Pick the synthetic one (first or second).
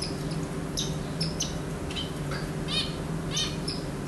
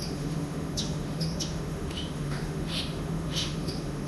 second